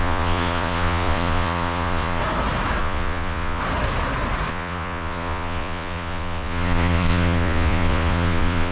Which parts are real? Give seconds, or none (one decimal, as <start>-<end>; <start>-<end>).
2.2-2.8; 3.6-4.5